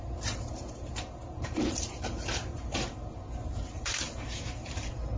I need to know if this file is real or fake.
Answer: fake